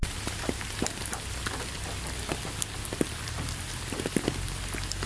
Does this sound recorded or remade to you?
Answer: recorded